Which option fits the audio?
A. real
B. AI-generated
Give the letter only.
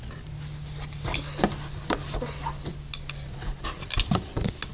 A